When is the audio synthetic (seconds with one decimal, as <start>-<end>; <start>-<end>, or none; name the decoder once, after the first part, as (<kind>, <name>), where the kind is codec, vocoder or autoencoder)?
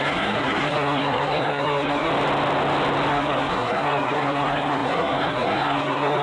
0.0-2.1 (codec, SNAC); 3.1-6.2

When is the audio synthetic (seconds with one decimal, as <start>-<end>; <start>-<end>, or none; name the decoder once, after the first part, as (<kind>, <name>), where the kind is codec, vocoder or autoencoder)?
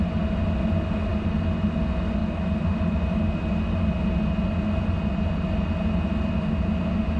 none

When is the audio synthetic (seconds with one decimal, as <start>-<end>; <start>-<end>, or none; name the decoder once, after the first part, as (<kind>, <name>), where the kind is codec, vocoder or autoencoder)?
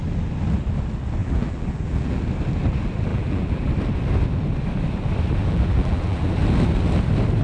1.2-2.2 (vocoder, BigVGAN v2); 3.1-3.7; 5.4-6.3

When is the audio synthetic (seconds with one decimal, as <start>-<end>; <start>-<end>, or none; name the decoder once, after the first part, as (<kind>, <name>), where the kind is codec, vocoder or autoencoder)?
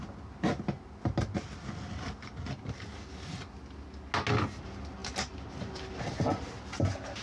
none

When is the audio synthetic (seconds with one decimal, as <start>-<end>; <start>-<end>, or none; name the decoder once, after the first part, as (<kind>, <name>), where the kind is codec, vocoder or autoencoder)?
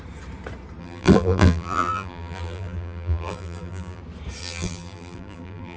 0.8-4.0 (vocoder, BigVGAN v2); 4.4-5.8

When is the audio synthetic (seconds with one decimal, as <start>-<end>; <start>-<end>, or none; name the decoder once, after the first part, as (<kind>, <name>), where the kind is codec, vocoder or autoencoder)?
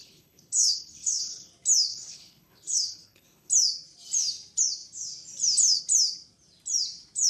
0.0-1.5 (codec, HILCodec); 1.9-3.5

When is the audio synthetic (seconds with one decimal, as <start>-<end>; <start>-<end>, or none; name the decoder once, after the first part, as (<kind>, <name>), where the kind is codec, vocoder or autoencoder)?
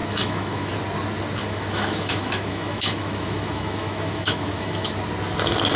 0.0-0.7 (autoencoder, DAC-VAE); 1.4-4.9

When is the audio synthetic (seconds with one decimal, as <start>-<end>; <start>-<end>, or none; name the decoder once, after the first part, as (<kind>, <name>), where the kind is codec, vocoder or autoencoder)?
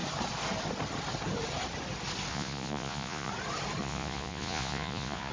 2.3-3.3 (vocoder, Vocos); 3.8-5.3